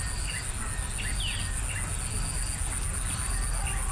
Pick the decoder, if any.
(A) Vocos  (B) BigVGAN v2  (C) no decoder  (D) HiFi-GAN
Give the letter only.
C